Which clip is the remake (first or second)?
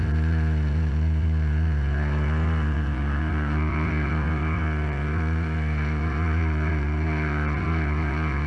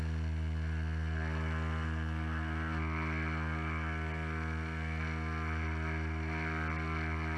first